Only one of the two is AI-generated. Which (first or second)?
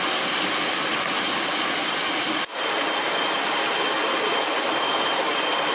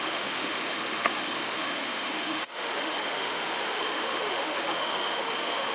second